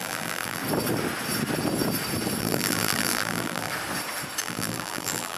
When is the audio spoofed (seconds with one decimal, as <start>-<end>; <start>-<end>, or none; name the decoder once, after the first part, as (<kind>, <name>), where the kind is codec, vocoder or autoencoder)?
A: 0.0-0.6 (vocoder, BigVGAN v2); 2.4-3.7; 4.4-5.4